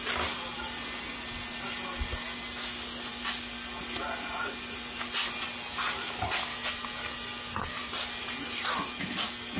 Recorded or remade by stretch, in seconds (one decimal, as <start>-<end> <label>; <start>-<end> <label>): 0.0-9.6 recorded